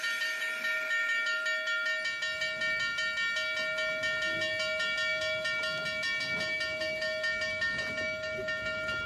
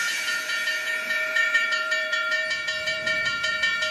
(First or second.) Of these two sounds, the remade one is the second